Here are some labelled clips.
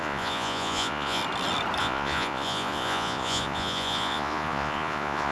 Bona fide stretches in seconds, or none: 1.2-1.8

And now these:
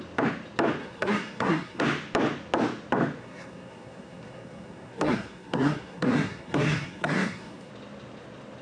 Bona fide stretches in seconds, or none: 0.0-0.8; 1.8-3.2; 7.7-8.6

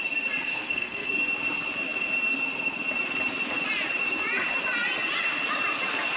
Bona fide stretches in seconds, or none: 0.0-0.5; 1.1-6.2

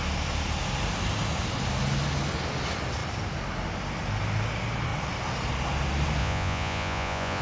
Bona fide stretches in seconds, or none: 0.0-6.2

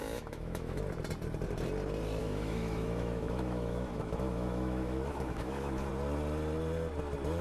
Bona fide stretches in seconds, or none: 0.8-2.2; 5.9-7.4

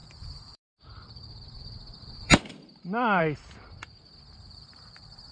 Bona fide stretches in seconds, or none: 3.2-5.3

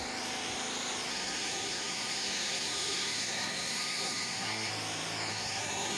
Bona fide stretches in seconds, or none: 0.0-1.1; 4.7-5.3

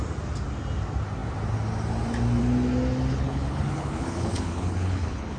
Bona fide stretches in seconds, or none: 0.0-3.1